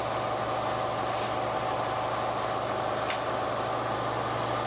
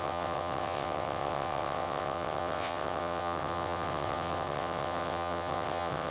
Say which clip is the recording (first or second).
first